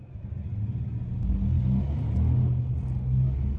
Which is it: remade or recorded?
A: recorded